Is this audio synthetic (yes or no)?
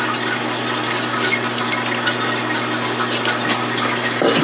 no